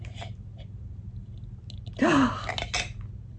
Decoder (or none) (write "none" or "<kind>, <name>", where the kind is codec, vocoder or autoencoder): none